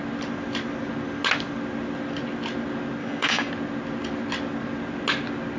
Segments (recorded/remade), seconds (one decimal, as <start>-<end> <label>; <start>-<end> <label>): 0.0-3.0 recorded; 3.0-3.5 remade; 3.5-5.6 recorded